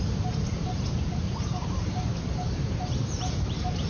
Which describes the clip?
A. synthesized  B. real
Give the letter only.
A